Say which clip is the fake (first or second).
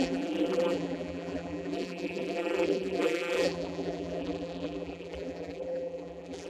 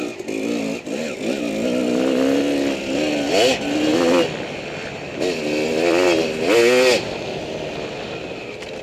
first